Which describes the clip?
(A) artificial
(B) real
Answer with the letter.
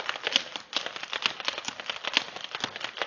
B